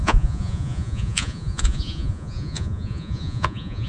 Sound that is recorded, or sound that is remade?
remade